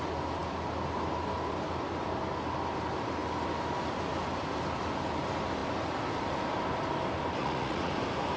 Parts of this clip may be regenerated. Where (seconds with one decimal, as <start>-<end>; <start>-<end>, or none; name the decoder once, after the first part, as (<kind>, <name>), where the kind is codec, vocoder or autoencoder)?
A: 7.4-7.9 (vocoder, Vocos)